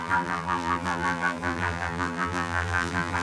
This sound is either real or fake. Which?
fake